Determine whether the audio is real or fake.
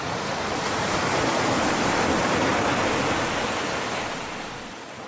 real